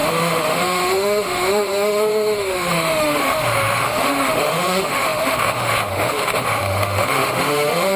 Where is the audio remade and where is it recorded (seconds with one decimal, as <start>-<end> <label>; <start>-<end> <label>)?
0.0-8.0 remade